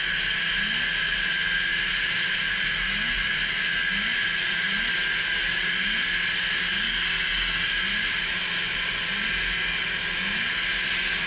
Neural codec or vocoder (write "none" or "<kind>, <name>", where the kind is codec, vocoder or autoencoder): none